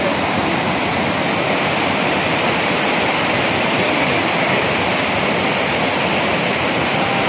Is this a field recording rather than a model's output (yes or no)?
yes